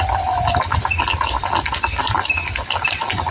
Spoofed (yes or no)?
no